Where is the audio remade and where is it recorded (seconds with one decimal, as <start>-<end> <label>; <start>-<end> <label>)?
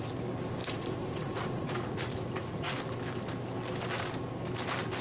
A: 0.0-0.6 recorded; 0.6-2.8 remade; 2.8-5.0 recorded